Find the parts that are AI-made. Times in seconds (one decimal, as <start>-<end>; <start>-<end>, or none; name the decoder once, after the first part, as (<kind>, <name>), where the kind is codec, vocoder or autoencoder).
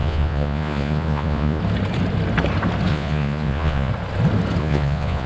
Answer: 0.0-1.6 (vocoder, Vocos); 2.9-3.9; 4.6-5.3